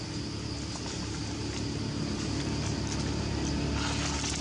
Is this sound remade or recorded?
recorded